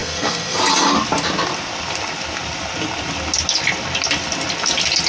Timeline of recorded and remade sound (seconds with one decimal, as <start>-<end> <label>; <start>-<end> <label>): 0.0-0.6 remade; 0.6-5.1 recorded